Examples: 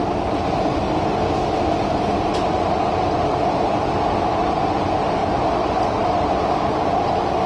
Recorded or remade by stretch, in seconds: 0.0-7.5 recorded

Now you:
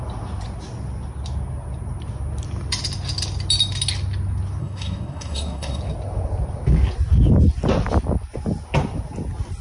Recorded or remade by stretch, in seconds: 0.0-4.6 recorded; 4.6-5.8 remade; 5.8-9.6 recorded

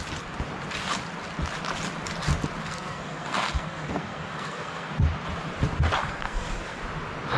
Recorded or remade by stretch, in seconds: 0.0-2.6 recorded; 2.6-4.9 remade; 4.9-6.0 recorded; 6.0-6.8 remade; 6.8-7.4 recorded

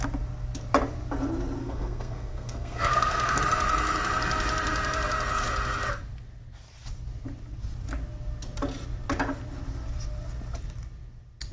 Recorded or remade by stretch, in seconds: 0.0-1.6 recorded; 1.6-3.4 remade; 3.4-11.5 recorded

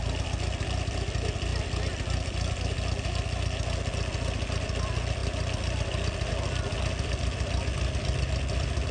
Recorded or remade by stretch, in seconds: 0.0-8.9 recorded

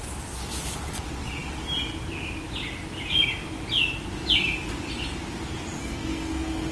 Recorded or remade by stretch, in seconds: 0.0-5.8 recorded; 5.8-6.7 remade

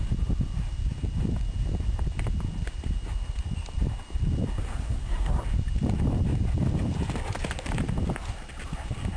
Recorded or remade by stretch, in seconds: 0.0-4.6 recorded; 4.6-5.4 remade; 5.4-9.2 recorded